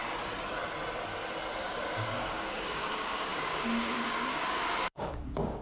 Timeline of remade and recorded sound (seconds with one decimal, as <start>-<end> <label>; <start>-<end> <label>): 0.0-1.6 recorded; 1.6-5.6 remade